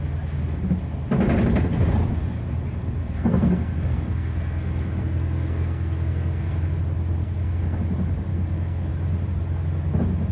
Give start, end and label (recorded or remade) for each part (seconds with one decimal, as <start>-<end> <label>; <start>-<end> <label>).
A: 0.0-3.0 recorded; 3.0-6.8 remade; 6.8-7.2 recorded; 7.2-7.8 remade; 7.8-8.3 recorded; 8.3-8.9 remade; 8.9-10.3 recorded